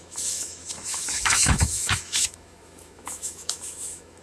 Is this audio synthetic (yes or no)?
yes